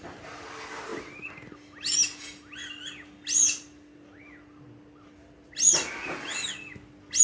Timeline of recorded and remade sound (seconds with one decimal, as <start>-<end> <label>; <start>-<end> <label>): 0.0-7.2 recorded